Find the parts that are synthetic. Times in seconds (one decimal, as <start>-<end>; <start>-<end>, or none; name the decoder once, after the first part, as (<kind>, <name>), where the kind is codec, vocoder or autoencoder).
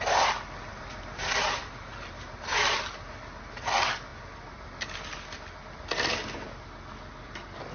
0.7-2.4 (vocoder, BigVGAN v2)